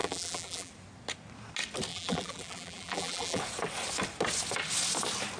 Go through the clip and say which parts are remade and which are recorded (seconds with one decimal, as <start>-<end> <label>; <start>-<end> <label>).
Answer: 0.0-0.7 remade; 0.7-1.9 recorded; 1.9-3.4 remade; 3.4-5.4 recorded